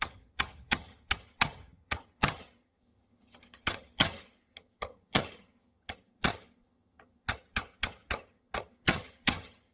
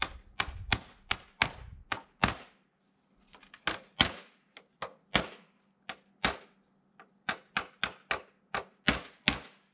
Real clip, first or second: second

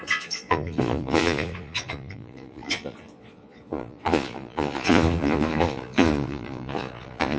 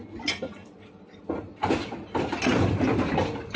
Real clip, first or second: second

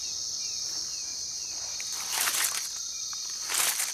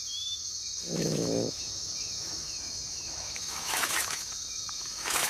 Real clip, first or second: first